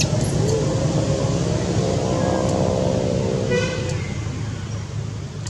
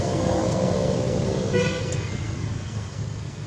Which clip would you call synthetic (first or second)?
second